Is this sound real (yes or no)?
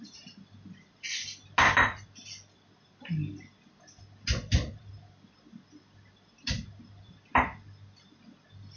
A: yes